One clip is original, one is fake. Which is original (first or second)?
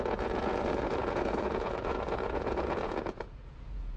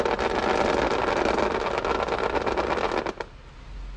second